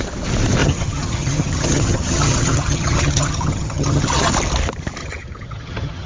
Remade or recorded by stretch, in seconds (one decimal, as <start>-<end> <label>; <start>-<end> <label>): 0.0-0.6 recorded; 0.6-4.3 remade; 4.3-5.0 recorded; 5.0-6.1 remade